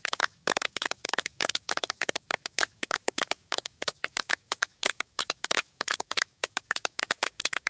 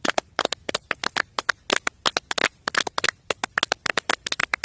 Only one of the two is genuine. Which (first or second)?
second